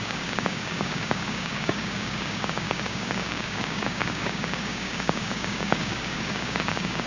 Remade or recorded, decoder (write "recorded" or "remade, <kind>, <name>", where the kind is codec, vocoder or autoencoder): remade, codec, DAC